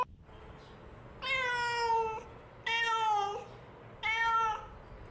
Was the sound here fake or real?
real